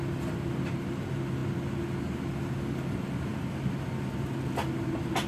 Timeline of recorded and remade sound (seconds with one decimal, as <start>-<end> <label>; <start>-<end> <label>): 0.0-5.3 recorded